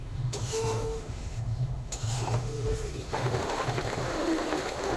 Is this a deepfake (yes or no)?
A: yes